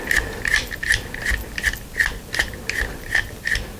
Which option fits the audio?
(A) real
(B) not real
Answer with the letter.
A